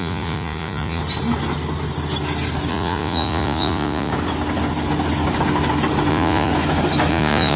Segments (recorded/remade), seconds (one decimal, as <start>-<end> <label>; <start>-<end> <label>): 0.0-1.0 remade; 1.0-2.7 recorded; 2.7-4.1 remade; 4.1-6.1 recorded; 6.1-6.5 remade; 6.5-7.1 recorded; 7.1-7.6 remade